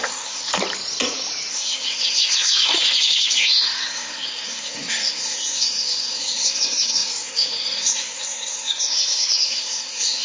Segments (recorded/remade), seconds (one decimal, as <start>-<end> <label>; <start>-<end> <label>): 0.0-0.5 remade; 0.5-1.5 recorded; 1.5-10.2 remade